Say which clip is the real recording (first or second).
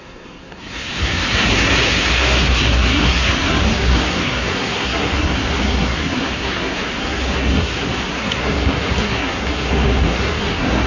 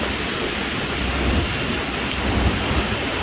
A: second